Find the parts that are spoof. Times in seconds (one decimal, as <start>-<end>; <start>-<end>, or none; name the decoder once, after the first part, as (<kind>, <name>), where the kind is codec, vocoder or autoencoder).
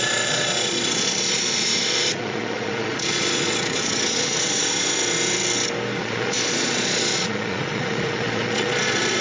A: 0.0-5.0 (vocoder, Vocos); 6.0-9.2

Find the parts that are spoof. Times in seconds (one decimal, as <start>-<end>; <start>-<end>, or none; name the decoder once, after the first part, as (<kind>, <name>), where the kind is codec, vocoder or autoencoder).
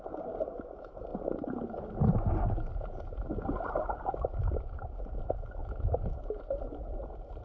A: 5.6-6.3 (autoencoder, DAC-VAE)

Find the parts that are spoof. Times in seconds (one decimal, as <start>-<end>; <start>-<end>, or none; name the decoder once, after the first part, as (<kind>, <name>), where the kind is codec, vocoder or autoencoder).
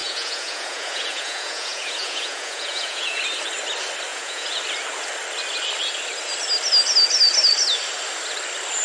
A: 0.0-3.2 (vocoder, Vocos); 4.1-4.6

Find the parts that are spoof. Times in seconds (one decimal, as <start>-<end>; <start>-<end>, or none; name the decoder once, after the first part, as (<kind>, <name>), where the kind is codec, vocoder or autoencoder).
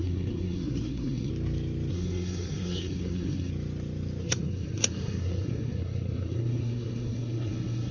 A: 0.0-1.3 (codec, SNAC); 1.9-3.5; 4.2-7.9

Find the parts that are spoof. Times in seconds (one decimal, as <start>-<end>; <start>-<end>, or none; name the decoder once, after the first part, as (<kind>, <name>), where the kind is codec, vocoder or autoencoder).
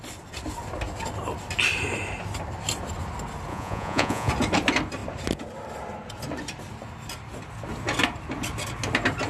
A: 3.5-4.3 (vocoder, Vocos)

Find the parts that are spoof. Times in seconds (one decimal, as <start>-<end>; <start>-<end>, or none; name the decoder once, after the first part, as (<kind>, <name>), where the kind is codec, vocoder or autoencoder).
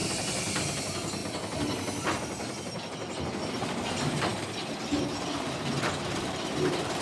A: 0.6-1.2 (vocoder, BigVGAN v2); 3.5-7.0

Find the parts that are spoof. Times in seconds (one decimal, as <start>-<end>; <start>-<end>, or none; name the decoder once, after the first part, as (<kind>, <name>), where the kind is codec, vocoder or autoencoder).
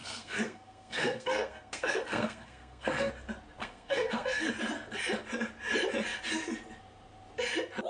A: 0.0-3.1 (codec, SNAC); 3.6-4.5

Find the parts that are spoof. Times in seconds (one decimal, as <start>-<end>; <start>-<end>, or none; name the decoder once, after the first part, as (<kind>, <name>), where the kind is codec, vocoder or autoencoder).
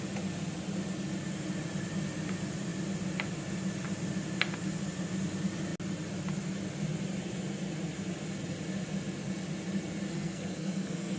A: 10.1-11.2 (codec, SNAC)